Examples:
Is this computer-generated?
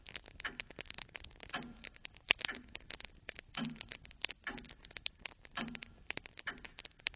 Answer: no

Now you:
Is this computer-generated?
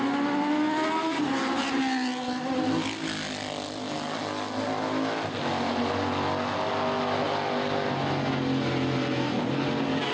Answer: no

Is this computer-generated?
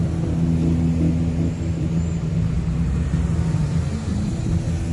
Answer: no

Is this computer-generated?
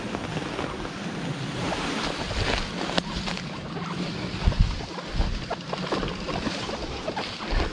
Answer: no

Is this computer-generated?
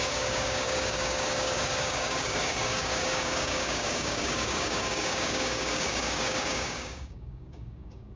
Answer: yes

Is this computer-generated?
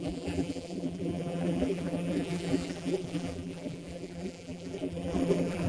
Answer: yes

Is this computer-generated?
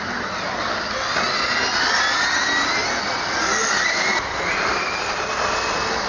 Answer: no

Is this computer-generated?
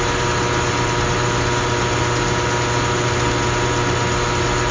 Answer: no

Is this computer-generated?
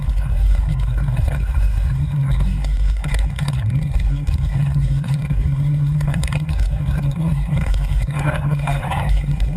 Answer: yes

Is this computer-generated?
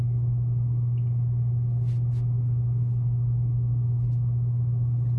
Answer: no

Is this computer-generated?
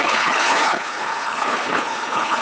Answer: yes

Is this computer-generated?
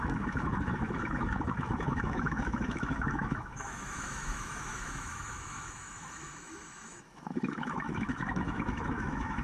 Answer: yes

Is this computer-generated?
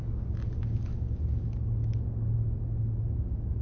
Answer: no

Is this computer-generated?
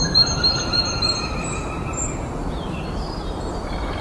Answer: no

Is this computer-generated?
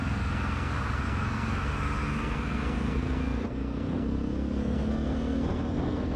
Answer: yes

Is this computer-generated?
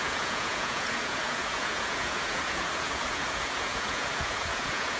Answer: yes